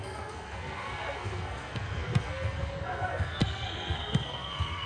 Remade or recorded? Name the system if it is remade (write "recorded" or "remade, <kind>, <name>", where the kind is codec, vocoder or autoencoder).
remade, codec, SNAC